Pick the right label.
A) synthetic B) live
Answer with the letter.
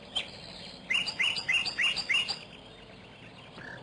B